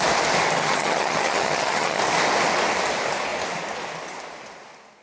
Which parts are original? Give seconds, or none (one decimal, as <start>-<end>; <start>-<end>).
0.0-0.6; 2.0-5.0